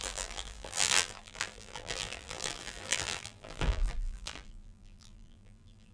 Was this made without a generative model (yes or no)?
no